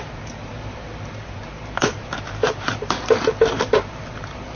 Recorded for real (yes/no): no